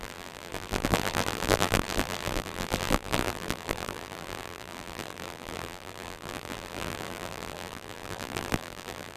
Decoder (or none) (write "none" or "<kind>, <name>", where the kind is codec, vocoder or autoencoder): vocoder, BigVGAN v2